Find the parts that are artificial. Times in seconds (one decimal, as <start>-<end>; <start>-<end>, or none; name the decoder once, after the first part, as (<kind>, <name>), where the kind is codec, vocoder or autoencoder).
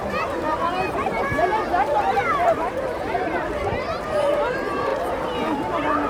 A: 0.0-4.9 (vocoder, BigVGAN v2)